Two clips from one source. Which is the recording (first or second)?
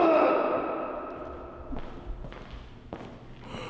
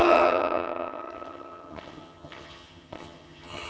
first